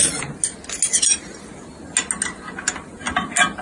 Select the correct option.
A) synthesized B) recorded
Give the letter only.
B